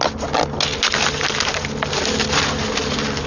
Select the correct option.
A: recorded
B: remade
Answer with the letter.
A